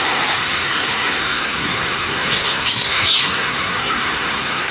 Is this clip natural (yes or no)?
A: no